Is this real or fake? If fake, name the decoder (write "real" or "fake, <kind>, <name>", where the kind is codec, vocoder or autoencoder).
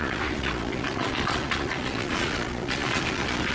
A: fake, vocoder, Vocos